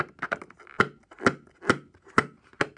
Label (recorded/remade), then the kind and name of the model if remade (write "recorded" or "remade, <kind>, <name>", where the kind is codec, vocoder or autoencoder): recorded